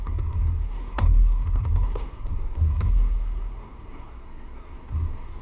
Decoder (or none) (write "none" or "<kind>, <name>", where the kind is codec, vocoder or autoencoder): codec, SNAC